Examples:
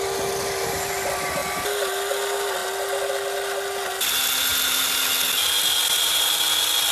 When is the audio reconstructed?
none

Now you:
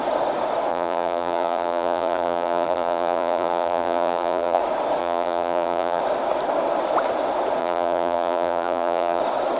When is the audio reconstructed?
0.7-4.6 (vocoder, BigVGAN v2); 5.0-6.0; 7.6-9.2